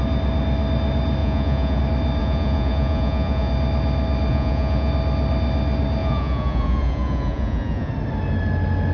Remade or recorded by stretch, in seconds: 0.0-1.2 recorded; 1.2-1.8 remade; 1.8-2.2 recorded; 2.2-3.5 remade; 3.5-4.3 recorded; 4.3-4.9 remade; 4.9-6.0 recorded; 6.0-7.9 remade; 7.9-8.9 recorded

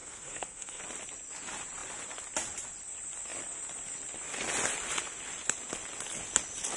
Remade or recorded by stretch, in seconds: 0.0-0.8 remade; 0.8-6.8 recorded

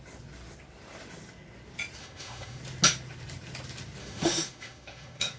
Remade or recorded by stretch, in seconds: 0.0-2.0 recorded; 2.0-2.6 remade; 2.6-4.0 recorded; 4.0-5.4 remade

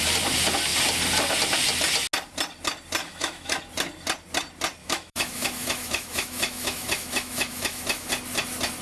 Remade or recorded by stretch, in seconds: 0.0-3.0 recorded; 3.0-3.6 remade; 3.6-4.8 recorded; 4.8-8.1 remade; 8.1-8.8 recorded